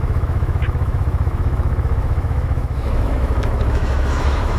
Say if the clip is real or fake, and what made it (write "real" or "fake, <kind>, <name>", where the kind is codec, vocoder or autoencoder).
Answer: fake, autoencoder, DAC-VAE